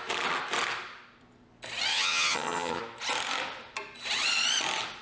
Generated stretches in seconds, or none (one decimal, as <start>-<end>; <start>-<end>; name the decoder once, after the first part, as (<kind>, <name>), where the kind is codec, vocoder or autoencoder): 1.9-2.8 (vocoder, HiFi-GAN)